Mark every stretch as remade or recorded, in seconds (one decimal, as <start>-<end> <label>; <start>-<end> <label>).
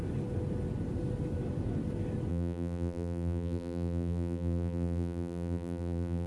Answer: 0.0-2.3 recorded; 2.3-6.3 remade